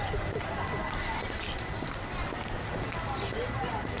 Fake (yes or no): no